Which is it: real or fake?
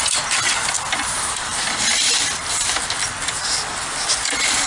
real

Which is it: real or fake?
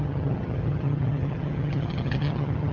fake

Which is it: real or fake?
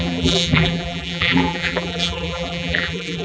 fake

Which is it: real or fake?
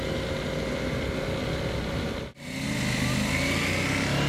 real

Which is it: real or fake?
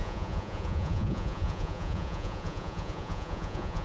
fake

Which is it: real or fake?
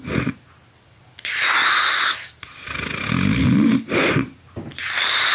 real